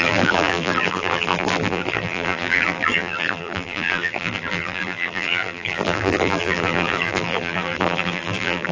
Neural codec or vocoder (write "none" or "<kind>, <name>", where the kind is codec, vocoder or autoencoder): vocoder, BigVGAN v2